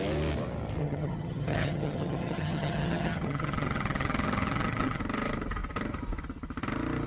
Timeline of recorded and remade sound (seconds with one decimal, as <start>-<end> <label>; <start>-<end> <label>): 0.0-0.8 recorded; 0.8-5.0 remade; 5.0-7.1 recorded

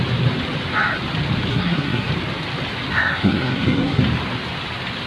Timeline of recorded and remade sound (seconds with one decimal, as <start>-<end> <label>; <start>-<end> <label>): 0.0-1.5 recorded; 1.5-2.1 remade; 2.1-2.9 recorded; 2.9-4.0 remade; 4.0-5.1 recorded

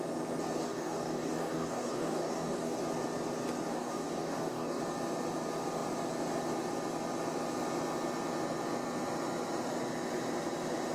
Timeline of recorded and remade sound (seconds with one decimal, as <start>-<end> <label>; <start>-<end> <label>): 0.0-0.6 recorded; 0.6-2.8 remade; 2.8-3.7 recorded; 3.7-4.8 remade; 4.8-10.9 recorded

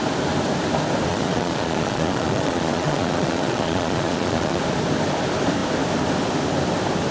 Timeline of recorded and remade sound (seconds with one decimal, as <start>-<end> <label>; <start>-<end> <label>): 0.0-1.1 recorded; 1.1-4.6 remade; 4.6-7.1 recorded